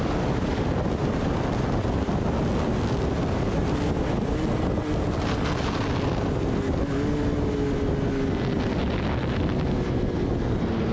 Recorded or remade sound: recorded